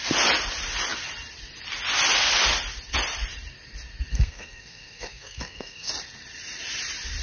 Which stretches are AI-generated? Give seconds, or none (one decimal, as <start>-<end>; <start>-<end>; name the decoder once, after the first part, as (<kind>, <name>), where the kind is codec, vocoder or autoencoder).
4.1-5.9 (codec, SNAC)